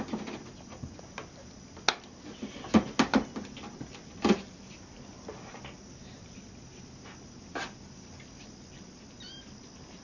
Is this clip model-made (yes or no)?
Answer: no